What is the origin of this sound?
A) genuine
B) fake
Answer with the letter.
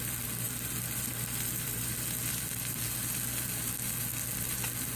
A